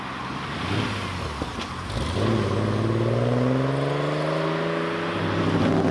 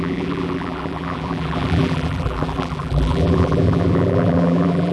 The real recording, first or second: first